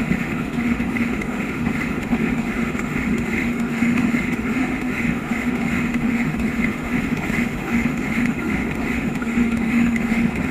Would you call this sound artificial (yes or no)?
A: yes